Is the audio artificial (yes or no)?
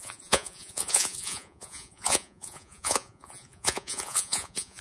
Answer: yes